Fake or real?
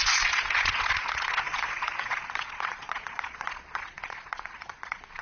fake